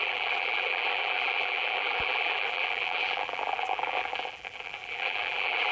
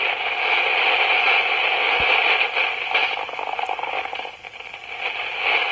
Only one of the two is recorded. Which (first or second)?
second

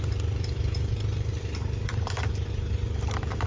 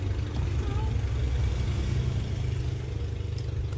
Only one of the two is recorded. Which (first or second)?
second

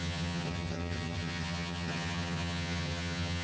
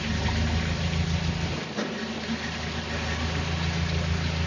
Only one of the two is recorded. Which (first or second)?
second